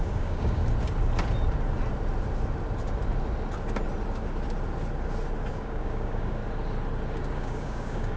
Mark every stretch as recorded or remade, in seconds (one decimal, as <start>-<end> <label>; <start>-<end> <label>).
0.0-0.6 remade; 0.6-5.5 recorded; 5.5-6.4 remade; 6.4-7.3 recorded; 7.3-8.2 remade